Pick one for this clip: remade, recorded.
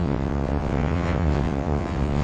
remade